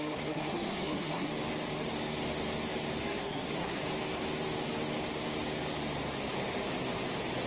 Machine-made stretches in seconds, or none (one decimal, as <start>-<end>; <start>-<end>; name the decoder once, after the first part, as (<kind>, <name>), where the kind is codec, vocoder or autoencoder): 0.0-1.3 (codec, SNAC); 3.0-3.8